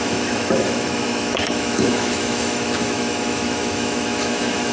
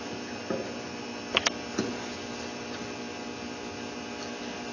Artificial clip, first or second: first